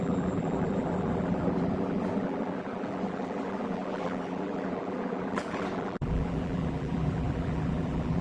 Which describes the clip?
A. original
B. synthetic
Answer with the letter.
B